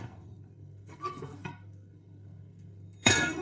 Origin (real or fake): fake